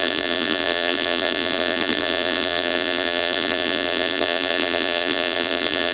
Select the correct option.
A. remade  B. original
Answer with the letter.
A